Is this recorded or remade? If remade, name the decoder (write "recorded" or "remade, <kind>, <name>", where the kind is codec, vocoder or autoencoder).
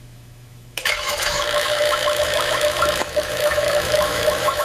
remade, autoencoder, DAC-VAE